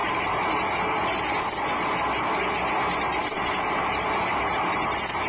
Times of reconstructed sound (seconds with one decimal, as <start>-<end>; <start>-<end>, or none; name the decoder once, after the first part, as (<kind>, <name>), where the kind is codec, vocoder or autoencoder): 0.0-0.5 (vocoder, BigVGAN v2); 3.2-4.1